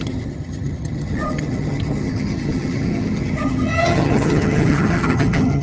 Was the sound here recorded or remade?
remade